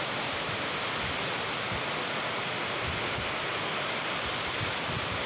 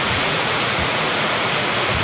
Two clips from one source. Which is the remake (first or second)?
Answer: second